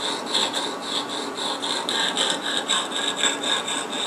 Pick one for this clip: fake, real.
real